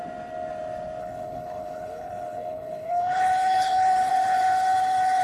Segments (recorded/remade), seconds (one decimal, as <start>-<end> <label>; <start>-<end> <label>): 0.0-1.0 recorded; 1.0-4.1 remade; 4.1-5.2 recorded